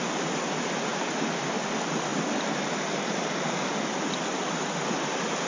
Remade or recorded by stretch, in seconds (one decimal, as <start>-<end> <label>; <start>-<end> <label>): 0.0-0.9 recorded; 0.9-1.4 remade; 1.4-5.5 recorded